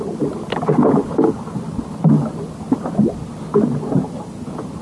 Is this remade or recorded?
recorded